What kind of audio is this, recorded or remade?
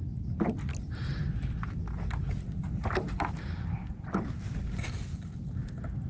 recorded